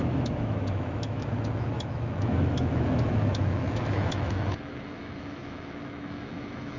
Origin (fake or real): fake